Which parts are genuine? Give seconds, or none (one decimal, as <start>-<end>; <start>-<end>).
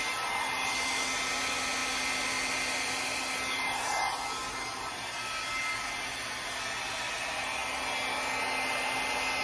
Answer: 0.0-9.4